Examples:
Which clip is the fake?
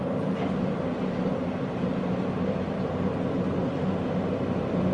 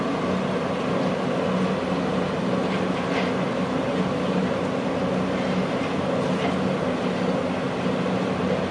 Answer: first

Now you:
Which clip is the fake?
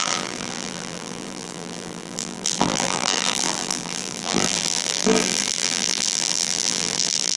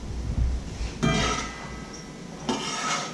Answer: first